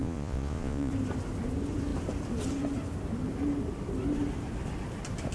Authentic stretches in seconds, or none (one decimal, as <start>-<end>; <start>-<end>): 0.9-5.3